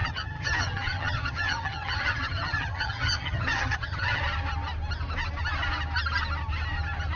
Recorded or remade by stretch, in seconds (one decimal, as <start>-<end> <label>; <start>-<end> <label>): 0.0-4.2 remade; 4.2-7.2 recorded